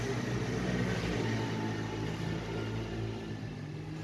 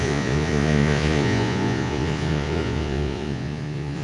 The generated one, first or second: second